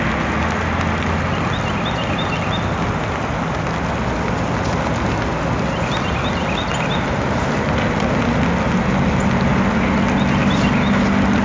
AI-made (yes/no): no